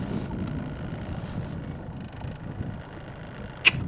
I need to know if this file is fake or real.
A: real